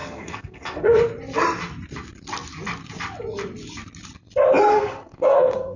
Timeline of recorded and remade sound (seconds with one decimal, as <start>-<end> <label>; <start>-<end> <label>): 0.0-1.0 remade; 1.0-4.7 recorded; 4.7-5.8 remade